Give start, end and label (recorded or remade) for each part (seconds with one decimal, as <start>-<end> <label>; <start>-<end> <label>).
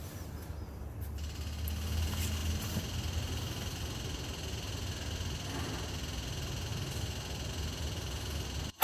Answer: 0.0-8.8 recorded